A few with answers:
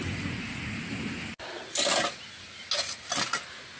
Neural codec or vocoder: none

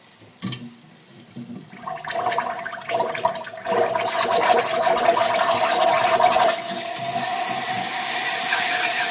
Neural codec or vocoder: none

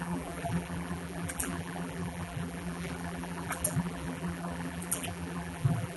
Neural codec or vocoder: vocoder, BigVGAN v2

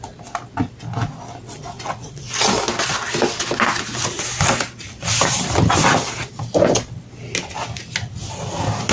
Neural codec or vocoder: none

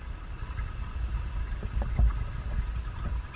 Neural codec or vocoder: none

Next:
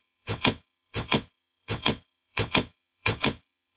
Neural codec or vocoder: vocoder, WaveNeXt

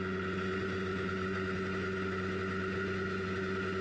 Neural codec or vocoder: none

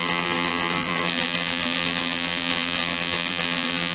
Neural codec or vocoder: vocoder, BigVGAN v2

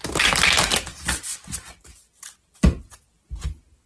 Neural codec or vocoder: none